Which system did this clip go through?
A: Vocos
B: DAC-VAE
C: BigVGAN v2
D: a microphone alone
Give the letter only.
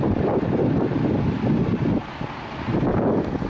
D